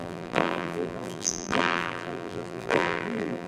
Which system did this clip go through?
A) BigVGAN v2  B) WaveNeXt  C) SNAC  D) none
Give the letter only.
A